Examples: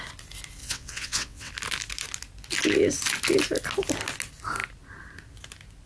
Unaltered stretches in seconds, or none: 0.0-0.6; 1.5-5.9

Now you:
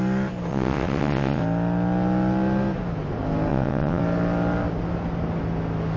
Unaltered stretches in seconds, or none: 0.0-0.5; 1.4-3.5; 4.0-6.0

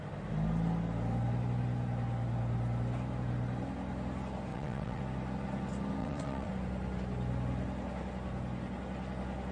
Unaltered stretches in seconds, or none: 0.0-4.5; 5.0-6.0; 6.5-9.5

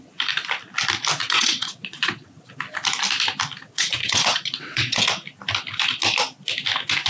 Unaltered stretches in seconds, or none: 0.0-1.2; 2.5-3.6; 5.0-7.1